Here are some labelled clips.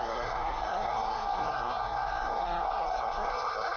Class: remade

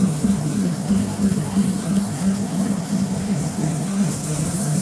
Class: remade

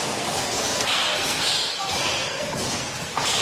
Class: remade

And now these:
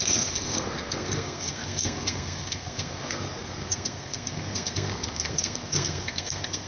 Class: remade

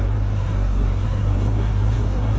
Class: remade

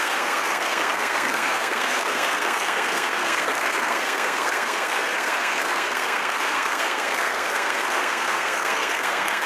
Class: remade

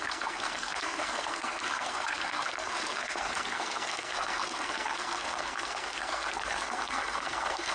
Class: remade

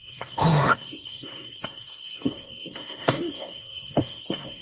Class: remade